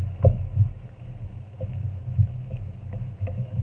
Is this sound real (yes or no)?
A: no